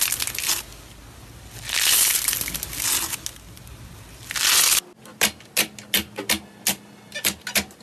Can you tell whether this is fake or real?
real